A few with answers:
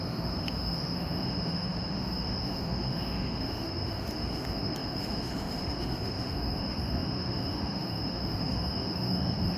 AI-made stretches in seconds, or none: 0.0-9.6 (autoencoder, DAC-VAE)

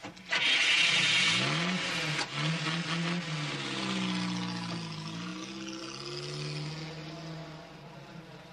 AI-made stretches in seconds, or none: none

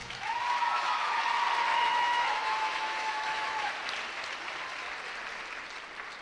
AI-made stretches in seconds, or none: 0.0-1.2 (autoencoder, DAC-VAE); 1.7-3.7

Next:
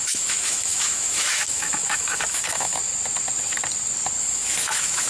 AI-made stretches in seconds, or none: 0.0-2.8 (autoencoder, DAC-VAE); 4.2-5.1

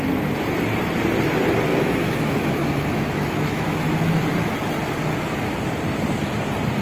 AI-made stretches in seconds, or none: 1.7-4.2 (autoencoder, DAC-VAE)

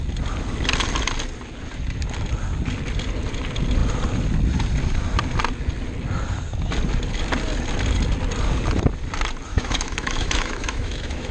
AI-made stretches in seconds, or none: 9.5-11.3 (autoencoder, DAC-VAE)